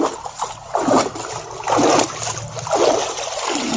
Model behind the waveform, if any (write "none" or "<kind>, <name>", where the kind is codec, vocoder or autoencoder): none